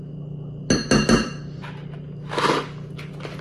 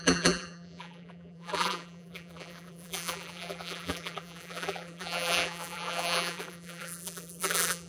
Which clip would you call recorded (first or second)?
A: first